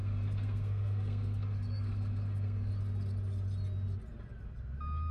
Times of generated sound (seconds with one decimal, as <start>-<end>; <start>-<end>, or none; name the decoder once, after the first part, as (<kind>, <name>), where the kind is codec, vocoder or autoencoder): 0.0-2.7 (codec, SNAC)

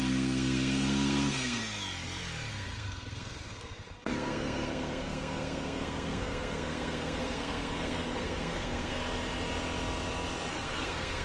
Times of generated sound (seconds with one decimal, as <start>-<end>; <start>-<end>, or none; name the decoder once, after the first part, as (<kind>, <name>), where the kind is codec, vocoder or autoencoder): 0.0-1.6 (codec, SNAC); 2.5-9.0; 10.5-11.2

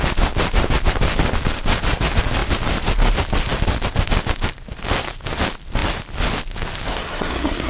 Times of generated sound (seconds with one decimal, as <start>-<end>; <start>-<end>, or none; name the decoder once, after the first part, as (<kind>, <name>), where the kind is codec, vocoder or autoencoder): 6.9-7.7 (codec, SNAC)

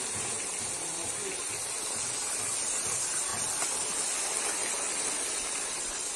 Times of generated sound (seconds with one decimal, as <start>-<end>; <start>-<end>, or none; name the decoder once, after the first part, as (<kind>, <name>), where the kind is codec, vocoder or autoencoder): none

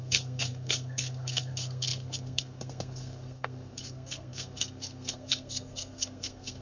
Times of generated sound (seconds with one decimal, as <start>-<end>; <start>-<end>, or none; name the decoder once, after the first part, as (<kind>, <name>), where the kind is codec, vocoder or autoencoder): 0.0-6.6 (codec, SNAC)

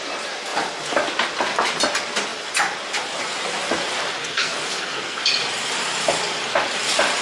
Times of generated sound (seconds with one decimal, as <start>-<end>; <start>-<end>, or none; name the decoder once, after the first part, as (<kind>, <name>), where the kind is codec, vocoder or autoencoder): 4.2-5.2 (codec, SNAC)